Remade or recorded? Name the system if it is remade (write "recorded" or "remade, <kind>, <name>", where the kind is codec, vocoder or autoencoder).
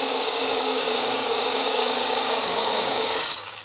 remade, codec, DAC